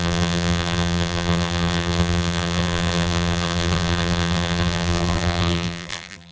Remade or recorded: remade